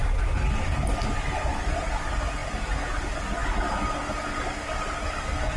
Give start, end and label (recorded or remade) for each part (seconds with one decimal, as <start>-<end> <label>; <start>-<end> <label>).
0.0-5.6 recorded